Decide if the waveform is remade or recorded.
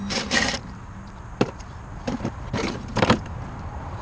remade